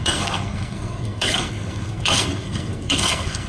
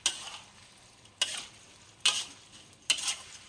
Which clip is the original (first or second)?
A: second